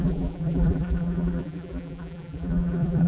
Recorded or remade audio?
remade